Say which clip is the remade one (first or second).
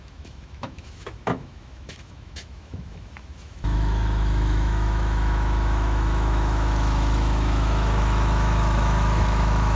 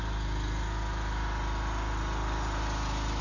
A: first